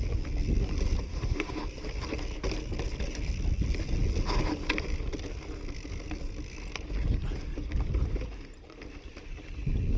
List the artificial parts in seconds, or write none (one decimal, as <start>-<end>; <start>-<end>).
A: 1.1-1.6